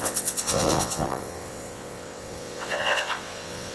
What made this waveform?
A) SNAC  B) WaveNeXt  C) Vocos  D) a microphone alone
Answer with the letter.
B